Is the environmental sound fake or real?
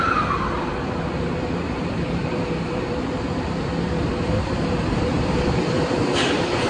fake